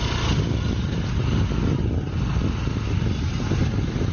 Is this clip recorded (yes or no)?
yes